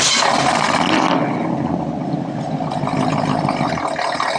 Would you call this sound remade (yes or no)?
no